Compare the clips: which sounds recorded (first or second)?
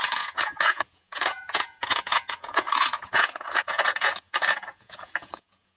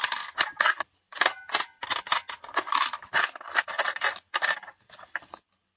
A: second